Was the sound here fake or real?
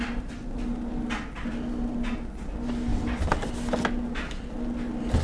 real